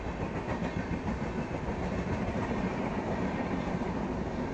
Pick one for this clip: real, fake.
real